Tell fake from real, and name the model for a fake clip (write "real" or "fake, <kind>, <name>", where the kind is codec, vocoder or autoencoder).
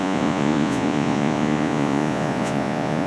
fake, vocoder, Vocos